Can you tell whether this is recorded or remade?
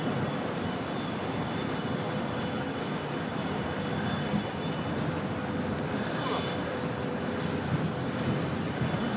remade